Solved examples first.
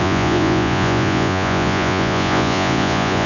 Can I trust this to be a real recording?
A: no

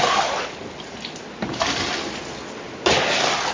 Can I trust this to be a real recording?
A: yes